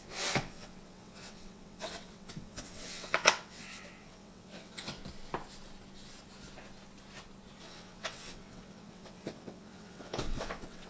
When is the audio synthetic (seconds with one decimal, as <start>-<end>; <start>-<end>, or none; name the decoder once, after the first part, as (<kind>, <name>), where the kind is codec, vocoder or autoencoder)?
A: 0.0-5.0 (vocoder, WaveNeXt); 7.6-10.9